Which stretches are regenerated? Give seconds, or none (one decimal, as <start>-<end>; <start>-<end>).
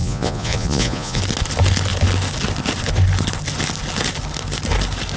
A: 0.0-1.2